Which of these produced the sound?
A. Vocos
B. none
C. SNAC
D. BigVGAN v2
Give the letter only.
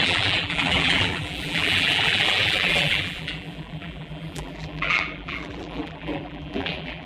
D